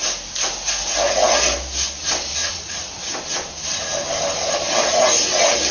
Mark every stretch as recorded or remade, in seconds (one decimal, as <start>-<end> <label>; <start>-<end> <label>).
0.0-2.4 recorded; 2.4-3.2 remade; 3.2-5.7 recorded